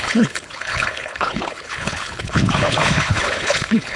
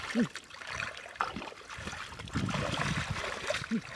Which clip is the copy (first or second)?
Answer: first